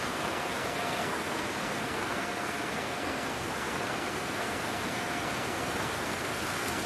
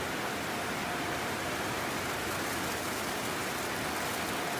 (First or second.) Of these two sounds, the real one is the second